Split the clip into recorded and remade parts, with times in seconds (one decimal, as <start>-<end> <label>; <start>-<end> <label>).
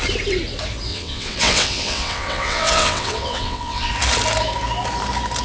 0.0-0.9 recorded; 0.9-3.9 remade; 3.9-5.4 recorded